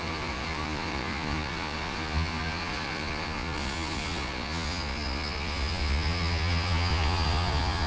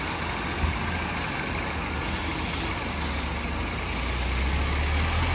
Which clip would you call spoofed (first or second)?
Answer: first